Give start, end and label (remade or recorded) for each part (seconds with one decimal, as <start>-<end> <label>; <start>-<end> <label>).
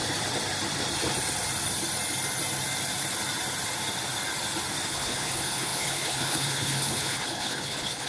0.0-4.9 recorded; 4.9-8.1 remade